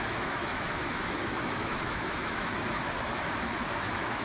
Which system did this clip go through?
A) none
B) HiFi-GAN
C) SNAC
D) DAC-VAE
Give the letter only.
D